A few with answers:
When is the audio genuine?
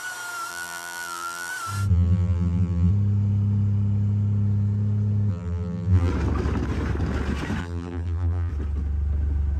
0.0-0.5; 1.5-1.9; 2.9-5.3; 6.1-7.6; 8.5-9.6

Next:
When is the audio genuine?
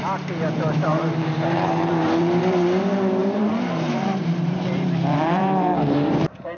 0.0-0.9; 2.8-3.2